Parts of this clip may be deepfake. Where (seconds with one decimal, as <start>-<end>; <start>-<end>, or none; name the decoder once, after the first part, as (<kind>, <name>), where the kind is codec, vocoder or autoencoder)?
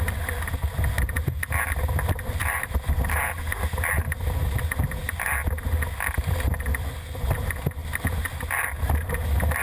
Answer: 2.4-3.2 (vocoder, BigVGAN v2)